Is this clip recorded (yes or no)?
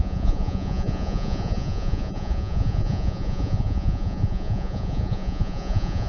no